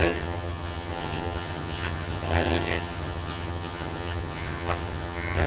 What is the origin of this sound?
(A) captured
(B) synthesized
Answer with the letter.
B